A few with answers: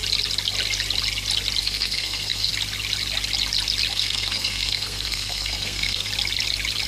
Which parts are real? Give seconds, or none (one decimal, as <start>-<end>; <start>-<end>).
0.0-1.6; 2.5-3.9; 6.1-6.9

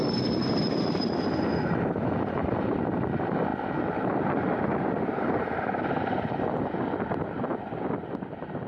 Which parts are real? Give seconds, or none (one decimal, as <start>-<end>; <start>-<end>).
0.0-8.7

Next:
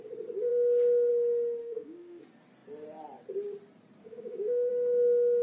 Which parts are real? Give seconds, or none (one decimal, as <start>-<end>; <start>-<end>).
0.0-1.6; 2.2-4.0; 4.7-5.4

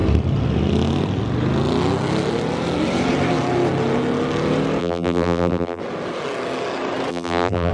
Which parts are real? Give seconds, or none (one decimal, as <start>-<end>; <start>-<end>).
0.0-4.8; 5.8-7.1

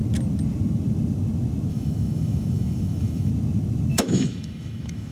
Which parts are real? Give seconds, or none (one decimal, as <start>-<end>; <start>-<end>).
0.0-1.7; 3.3-3.9